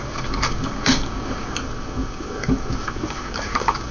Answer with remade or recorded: remade